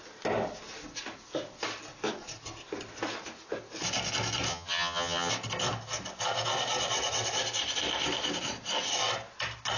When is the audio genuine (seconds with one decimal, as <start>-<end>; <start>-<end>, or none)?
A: 0.0-4.5; 5.3-9.8